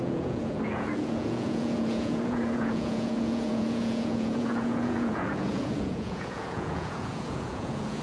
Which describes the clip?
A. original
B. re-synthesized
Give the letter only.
B